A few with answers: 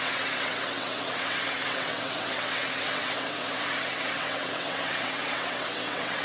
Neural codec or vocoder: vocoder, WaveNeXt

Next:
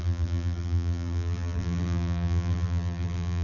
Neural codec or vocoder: vocoder, BigVGAN v2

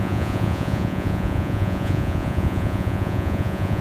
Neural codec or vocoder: vocoder, Vocos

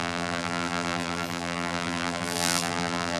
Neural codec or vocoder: vocoder, BigVGAN v2